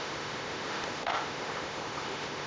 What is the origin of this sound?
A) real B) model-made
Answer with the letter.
B